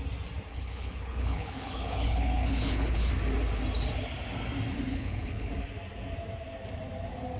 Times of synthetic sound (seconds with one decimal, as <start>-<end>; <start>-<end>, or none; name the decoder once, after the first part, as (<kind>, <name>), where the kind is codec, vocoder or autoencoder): 0.5-3.1 (codec, HILCodec); 4.9-5.5